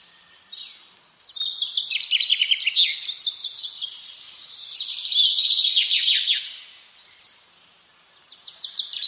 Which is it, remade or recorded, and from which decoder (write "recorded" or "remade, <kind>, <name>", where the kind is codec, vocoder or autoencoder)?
recorded